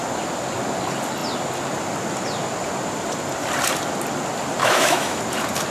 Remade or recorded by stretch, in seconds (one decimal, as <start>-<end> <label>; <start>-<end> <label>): 0.0-4.6 recorded; 4.6-5.2 remade; 5.2-5.7 recorded